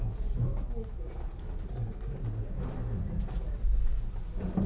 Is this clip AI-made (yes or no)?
no